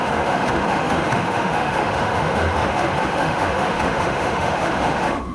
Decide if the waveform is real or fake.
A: fake